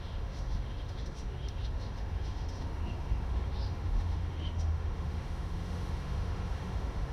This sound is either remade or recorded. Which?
remade